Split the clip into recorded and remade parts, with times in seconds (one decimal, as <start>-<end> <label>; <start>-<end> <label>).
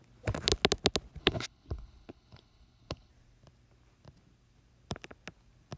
0.0-1.2 recorded; 1.2-3.1 remade; 3.1-5.8 recorded